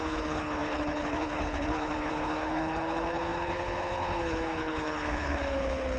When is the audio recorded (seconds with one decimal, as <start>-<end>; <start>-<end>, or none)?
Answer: none